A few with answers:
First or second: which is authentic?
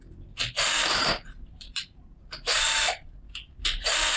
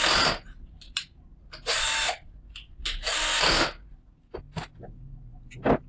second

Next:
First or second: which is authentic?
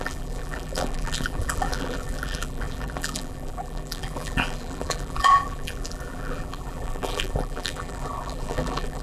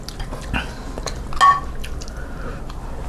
second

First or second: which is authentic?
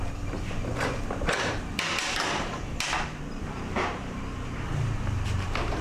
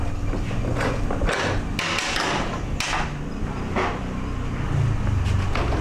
second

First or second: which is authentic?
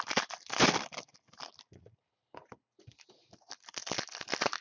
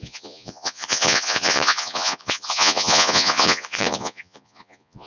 first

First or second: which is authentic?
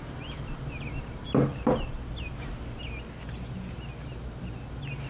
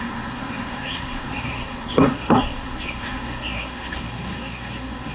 first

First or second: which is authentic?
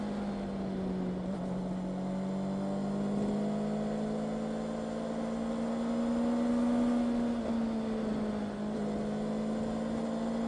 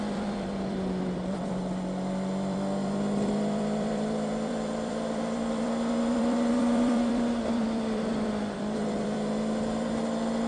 first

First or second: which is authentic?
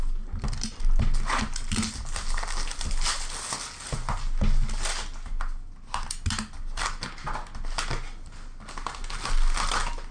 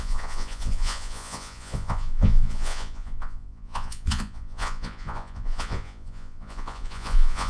first